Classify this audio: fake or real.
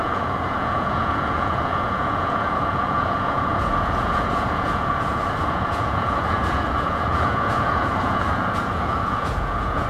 fake